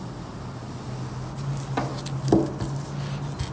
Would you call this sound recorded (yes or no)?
yes